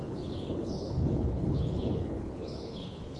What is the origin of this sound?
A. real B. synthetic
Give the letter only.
B